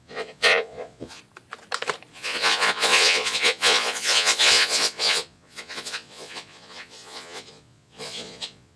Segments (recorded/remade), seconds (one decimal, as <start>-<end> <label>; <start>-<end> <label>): 0.0-1.2 remade; 1.2-2.1 recorded; 2.1-8.8 remade